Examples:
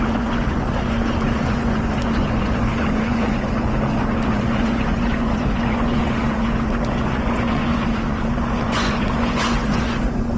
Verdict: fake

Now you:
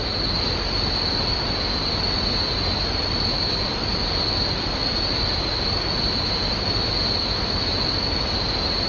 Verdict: real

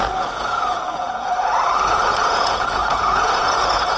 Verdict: fake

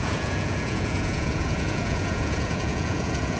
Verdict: fake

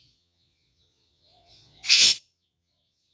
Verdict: fake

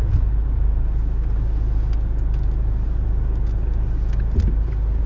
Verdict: real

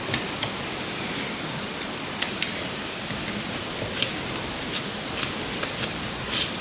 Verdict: real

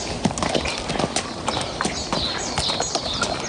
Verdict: real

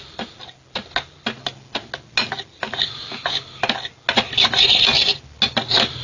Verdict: real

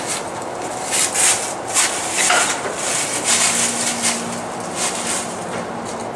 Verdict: real